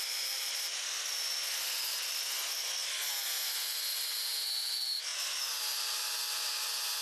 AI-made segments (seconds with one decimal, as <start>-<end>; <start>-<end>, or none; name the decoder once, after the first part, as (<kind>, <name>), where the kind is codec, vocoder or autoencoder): none